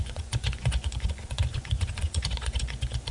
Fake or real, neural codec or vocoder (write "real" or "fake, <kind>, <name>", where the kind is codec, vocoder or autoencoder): fake, vocoder, Vocos